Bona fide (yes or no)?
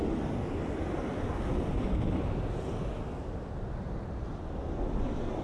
yes